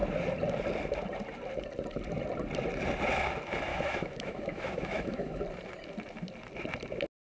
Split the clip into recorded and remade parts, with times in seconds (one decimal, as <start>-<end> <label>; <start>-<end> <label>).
0.0-3.7 recorded; 3.7-5.4 remade; 5.4-7.4 recorded